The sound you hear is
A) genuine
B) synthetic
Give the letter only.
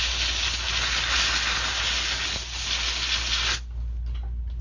A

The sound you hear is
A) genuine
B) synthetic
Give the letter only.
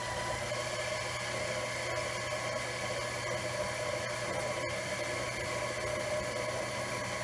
A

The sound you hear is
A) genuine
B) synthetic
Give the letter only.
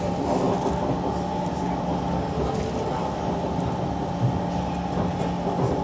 A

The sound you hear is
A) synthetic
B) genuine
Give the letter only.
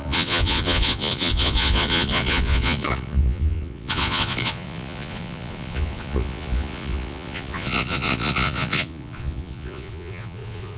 A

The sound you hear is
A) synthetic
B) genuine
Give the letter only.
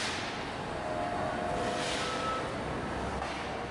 B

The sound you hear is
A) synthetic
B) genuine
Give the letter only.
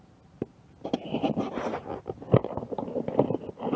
B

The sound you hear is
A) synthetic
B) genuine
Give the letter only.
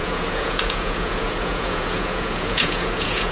A